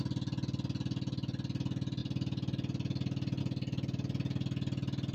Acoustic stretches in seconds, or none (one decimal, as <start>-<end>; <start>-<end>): 0.0-5.1